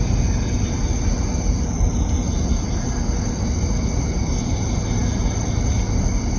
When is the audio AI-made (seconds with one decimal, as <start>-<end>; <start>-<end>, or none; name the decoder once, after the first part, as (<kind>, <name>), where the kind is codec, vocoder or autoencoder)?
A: none